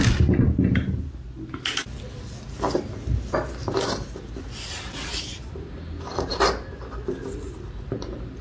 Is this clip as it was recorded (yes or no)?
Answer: yes